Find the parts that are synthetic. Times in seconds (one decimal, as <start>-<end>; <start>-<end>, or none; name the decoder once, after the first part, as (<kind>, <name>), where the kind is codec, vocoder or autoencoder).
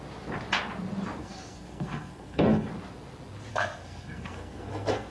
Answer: 1.2-2.7 (codec, SNAC); 3.5-5.1